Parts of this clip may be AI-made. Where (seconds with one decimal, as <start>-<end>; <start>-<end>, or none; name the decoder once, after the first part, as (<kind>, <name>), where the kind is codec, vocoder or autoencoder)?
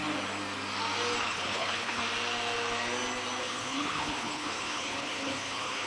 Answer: 1.2-2.0 (codec, HILCodec); 3.4-5.9